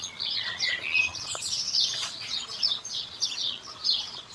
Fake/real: fake